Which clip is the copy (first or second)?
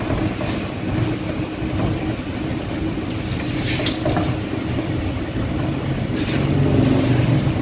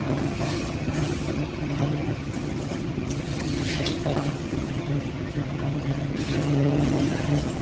second